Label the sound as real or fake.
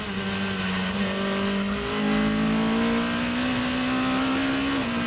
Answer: real